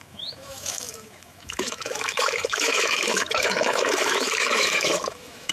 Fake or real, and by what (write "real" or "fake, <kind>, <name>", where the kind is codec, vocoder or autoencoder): fake, autoencoder, DAC-VAE